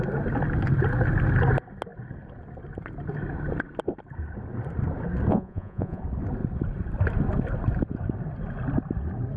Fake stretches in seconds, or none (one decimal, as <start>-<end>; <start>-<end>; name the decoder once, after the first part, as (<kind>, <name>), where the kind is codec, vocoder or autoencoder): 5.3-6.0 (vocoder, Vocos)